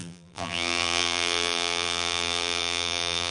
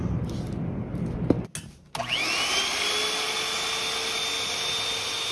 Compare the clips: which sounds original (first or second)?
second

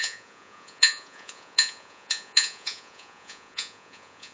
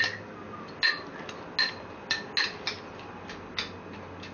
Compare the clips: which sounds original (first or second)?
second